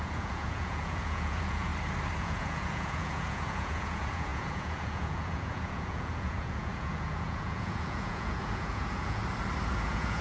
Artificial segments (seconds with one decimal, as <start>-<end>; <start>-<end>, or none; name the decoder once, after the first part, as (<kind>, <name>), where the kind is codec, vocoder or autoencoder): 0.0-1.7 (vocoder, Vocos); 2.2-9.2; 9.7-10.2